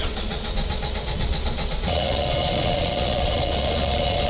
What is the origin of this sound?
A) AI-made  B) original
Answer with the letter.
A